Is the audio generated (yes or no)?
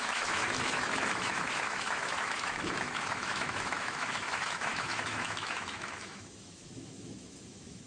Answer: yes